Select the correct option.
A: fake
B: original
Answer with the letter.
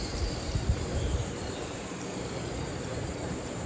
A